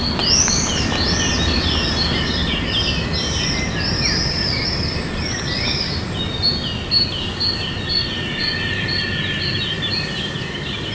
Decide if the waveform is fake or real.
real